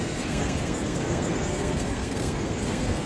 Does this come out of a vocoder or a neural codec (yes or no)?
yes